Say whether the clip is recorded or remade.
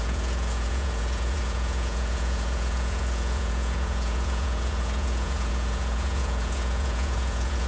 remade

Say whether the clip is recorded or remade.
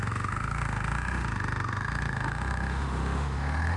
remade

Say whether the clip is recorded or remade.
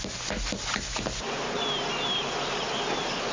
recorded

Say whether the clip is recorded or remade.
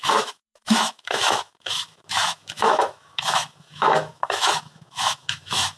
remade